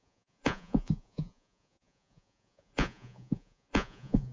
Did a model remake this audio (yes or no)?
yes